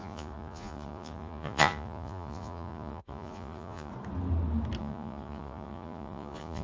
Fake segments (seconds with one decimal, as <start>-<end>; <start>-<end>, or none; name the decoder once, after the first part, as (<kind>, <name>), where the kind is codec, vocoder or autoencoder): 0.0-3.9 (vocoder, Vocos); 4.8-6.6